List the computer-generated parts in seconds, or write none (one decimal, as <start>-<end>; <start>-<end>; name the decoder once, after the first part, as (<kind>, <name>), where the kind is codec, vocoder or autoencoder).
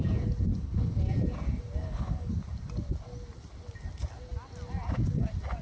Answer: 0.5-1.0 (codec, HILCodec); 1.8-2.3